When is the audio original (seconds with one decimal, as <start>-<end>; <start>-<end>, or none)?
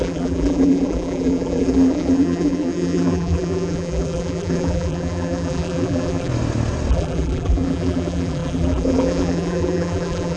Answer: 6.3-6.9